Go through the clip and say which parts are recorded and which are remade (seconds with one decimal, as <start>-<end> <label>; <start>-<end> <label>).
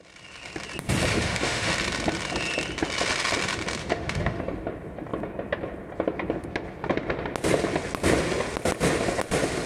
0.0-1.1 recorded; 1.1-1.7 remade; 1.7-3.8 recorded; 3.8-4.4 remade; 4.4-9.7 recorded